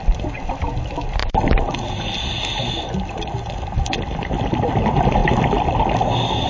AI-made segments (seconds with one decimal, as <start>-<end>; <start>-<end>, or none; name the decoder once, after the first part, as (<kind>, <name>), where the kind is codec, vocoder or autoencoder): none